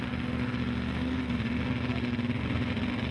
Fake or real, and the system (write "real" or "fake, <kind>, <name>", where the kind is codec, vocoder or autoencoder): real